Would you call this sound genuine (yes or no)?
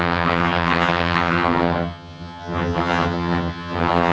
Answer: no